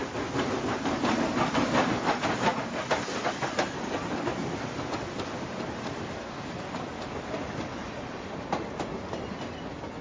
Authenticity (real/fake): real